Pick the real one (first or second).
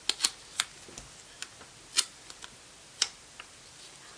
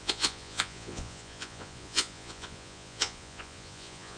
first